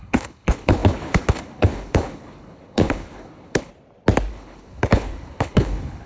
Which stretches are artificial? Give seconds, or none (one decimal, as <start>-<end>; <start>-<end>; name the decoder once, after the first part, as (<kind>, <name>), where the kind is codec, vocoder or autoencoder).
0.0-3.7 (codec, HILCodec); 4.3-6.1